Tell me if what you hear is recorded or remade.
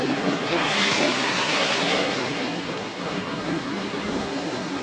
remade